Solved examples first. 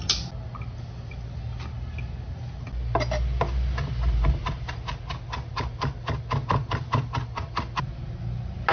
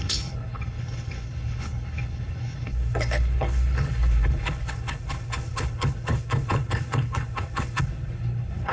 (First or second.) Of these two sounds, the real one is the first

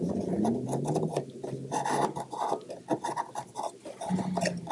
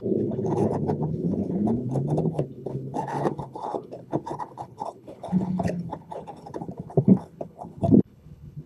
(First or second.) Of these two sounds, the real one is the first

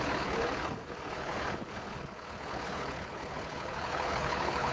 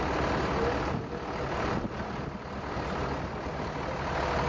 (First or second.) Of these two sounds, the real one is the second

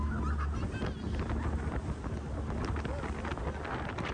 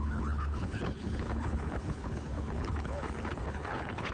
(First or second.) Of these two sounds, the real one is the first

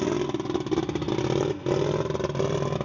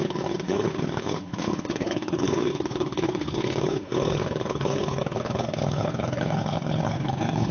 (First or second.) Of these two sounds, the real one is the first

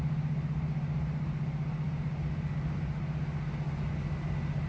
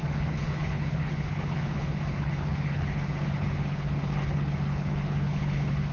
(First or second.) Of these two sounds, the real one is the first